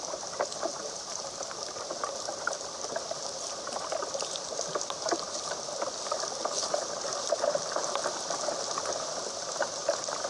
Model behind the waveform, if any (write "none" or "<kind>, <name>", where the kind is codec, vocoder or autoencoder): none